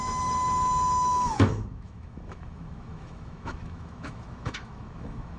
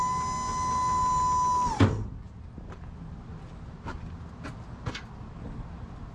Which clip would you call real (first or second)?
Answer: second